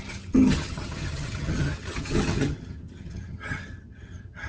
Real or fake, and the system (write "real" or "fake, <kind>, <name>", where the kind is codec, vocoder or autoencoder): fake, vocoder, HiFi-GAN